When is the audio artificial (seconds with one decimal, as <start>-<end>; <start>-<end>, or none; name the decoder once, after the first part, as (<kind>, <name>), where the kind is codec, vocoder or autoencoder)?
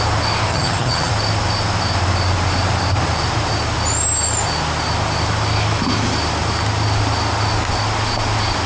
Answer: 0.5-1.1 (vocoder, HiFi-GAN)